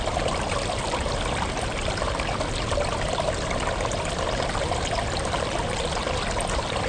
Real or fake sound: real